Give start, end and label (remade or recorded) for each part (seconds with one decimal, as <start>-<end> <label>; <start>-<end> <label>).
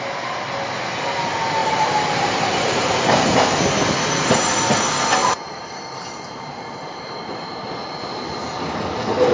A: 0.0-1.6 recorded; 1.6-3.3 remade; 3.3-5.2 recorded; 5.2-8.9 remade; 8.9-9.3 recorded